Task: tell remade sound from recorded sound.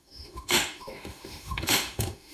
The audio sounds remade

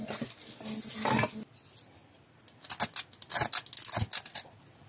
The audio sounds recorded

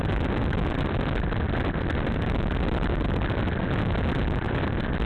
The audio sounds recorded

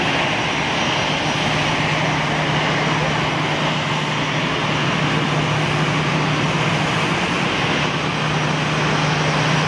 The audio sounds recorded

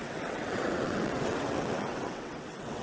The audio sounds remade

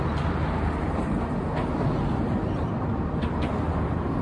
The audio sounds recorded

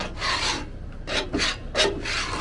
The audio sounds recorded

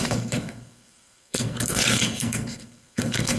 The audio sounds remade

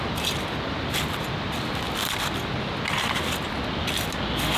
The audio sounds recorded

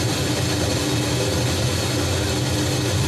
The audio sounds recorded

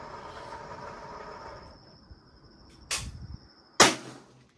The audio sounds recorded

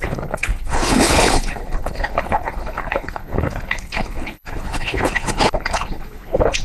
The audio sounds remade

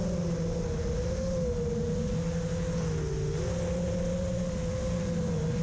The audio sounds recorded